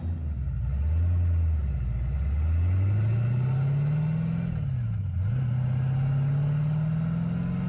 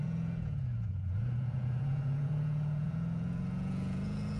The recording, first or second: first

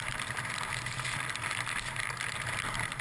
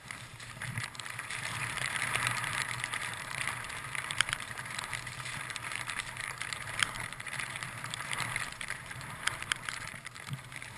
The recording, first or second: first